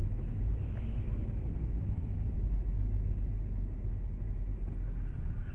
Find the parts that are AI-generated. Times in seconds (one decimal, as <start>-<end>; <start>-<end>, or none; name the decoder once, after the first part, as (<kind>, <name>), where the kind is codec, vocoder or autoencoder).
0.0-4.5 (autoencoder, DAC-VAE)